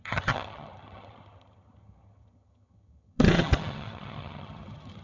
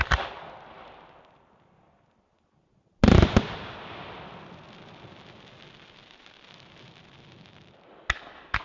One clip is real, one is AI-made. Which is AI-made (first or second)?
first